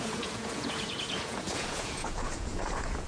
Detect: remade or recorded remade